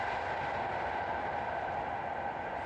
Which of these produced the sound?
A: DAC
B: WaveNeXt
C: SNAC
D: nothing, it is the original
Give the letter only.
D